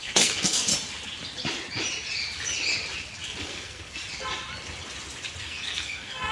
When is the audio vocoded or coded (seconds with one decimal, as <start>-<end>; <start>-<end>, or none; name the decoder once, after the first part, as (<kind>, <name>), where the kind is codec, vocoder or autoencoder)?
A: 0.0-0.7 (codec, SNAC); 3.4-4.0; 5.4-6.3